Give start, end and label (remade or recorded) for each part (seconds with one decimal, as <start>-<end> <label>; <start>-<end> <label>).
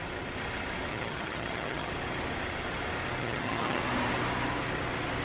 0.0-0.9 recorded; 0.9-1.9 remade; 1.9-3.2 recorded; 3.2-3.8 remade; 3.8-5.2 recorded